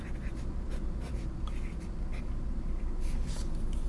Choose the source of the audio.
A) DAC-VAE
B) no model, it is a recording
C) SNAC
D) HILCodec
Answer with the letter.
B